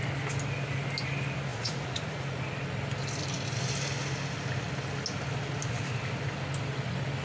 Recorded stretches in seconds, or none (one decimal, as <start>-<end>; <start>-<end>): 0.0-1.5; 2.4-7.2